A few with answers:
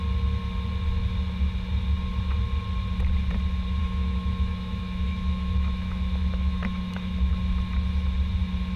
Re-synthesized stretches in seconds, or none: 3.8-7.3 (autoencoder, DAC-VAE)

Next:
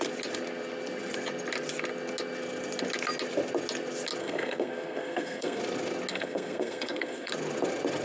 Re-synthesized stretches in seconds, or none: 4.2-5.6 (codec, SNAC); 6.1-7.3

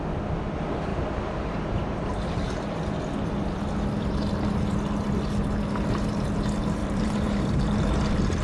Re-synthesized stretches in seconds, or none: 0.9-2.8 (vocoder, BigVGAN v2); 6.8-7.6

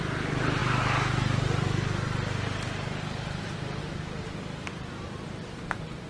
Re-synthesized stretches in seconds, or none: none

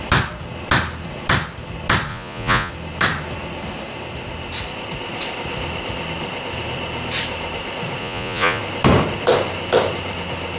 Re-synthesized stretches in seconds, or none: 2.1-2.7 (vocoder, Vocos); 8.0-8.6

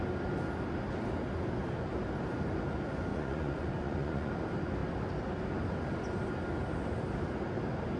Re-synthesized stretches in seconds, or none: 3.1-4.3 (vocoder, Vocos)

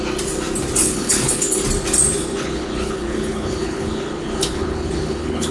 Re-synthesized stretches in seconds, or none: 0.8-1.6 (codec, HILCodec); 2.2-5.5